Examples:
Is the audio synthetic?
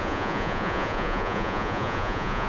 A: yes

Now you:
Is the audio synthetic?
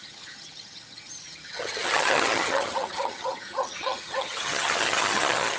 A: yes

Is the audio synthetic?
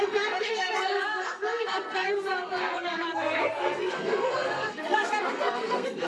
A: yes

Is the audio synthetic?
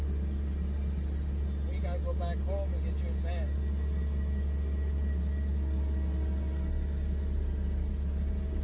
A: no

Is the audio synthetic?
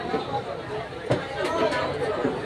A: no